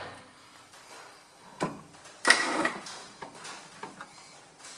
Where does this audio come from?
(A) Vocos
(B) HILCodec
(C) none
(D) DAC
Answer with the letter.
C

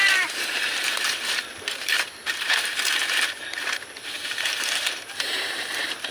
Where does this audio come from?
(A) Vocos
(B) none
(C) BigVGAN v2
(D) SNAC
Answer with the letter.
C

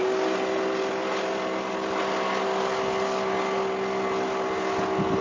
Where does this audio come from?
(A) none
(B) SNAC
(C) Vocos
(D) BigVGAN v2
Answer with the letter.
A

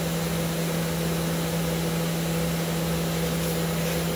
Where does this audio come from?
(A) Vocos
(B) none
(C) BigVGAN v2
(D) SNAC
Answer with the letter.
B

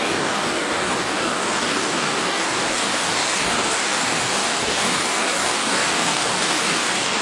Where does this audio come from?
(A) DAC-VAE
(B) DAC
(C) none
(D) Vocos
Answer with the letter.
B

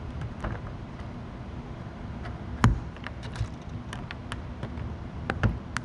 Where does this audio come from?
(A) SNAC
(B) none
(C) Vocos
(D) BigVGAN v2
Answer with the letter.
D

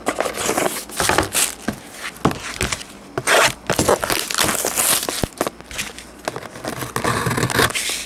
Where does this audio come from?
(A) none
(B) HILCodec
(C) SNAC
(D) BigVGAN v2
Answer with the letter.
A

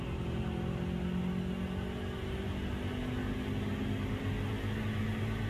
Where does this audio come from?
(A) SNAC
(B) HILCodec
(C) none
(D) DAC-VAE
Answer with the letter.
C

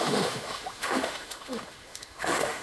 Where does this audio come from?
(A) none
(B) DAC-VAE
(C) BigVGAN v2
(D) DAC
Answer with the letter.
B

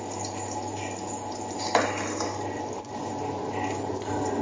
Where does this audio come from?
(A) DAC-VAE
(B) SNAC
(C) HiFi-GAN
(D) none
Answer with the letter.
D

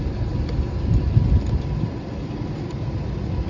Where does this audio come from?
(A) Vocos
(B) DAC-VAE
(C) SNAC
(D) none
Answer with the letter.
D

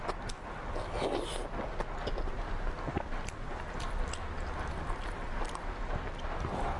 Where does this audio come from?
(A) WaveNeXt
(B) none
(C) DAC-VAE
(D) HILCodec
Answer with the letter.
B